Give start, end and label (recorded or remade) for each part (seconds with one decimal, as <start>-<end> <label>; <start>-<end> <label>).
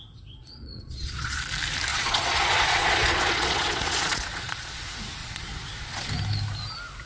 0.0-0.4 recorded; 0.4-1.4 remade; 1.4-1.9 recorded; 1.9-4.8 remade; 4.8-5.2 recorded; 5.2-6.1 remade; 6.1-7.1 recorded